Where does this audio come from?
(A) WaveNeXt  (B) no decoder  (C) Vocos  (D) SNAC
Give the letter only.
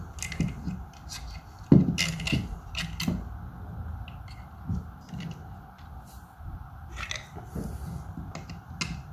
B